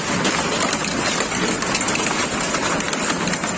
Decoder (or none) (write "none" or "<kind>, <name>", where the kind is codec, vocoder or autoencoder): none